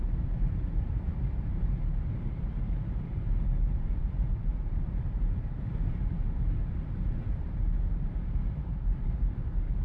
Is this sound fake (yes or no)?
yes